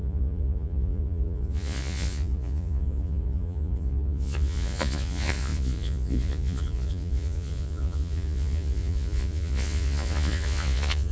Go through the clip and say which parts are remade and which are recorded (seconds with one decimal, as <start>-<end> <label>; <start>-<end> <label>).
0.0-11.1 remade